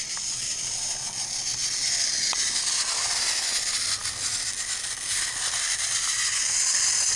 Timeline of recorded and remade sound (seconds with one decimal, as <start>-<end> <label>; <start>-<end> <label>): 0.0-7.2 recorded